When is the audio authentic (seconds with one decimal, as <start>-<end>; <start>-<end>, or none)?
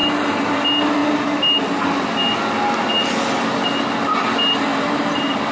0.5-5.5